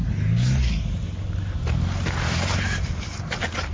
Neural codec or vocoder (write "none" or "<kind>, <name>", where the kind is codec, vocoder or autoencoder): none